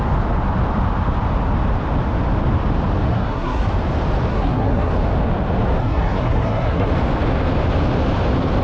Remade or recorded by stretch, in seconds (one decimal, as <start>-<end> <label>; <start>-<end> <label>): 0.0-3.1 recorded; 3.1-3.7 remade; 3.7-4.3 recorded; 4.3-4.9 remade; 4.9-5.8 recorded; 5.8-6.9 remade; 6.9-8.6 recorded